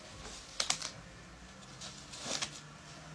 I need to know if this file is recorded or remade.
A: recorded